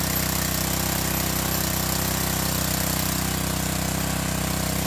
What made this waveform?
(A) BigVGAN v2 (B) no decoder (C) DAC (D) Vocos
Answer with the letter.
B